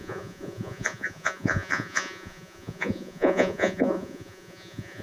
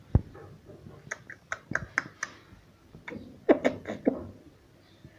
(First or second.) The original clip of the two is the second